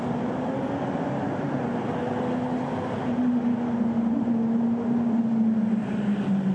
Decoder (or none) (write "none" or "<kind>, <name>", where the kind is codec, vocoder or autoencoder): none